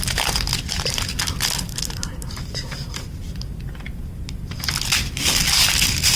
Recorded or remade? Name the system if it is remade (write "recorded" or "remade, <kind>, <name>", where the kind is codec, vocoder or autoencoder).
recorded